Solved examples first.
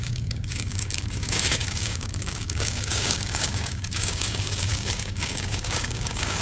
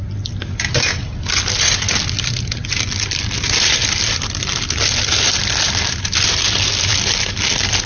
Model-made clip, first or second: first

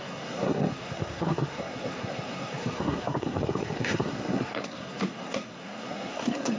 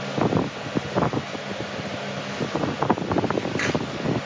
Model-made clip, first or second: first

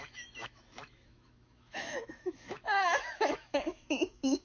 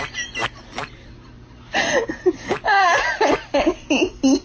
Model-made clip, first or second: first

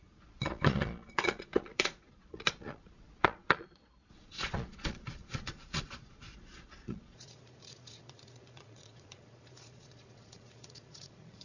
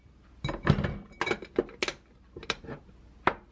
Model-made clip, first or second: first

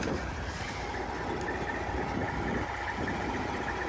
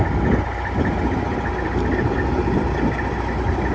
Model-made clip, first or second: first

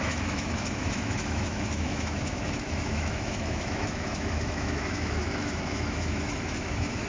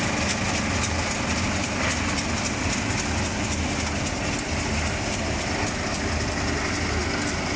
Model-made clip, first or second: first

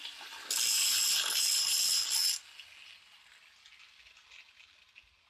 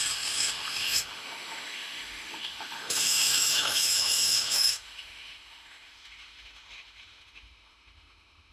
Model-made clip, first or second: second